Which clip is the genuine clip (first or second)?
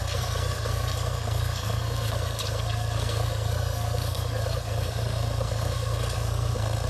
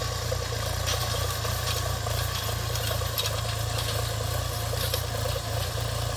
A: second